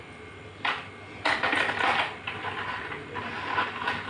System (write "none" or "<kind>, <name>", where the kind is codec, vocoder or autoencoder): none